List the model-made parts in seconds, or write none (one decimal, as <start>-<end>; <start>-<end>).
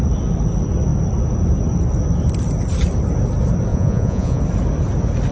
3.7-4.4